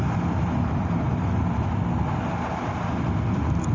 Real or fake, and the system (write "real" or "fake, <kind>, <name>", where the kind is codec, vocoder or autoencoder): real